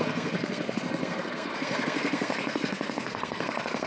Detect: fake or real fake